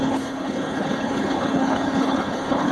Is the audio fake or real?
fake